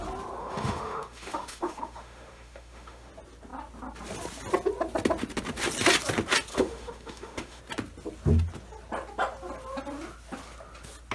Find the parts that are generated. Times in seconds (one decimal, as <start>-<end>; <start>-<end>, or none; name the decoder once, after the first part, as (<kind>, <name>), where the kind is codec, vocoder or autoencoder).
0.4-3.1 (autoencoder, DAC-VAE); 6.5-7.6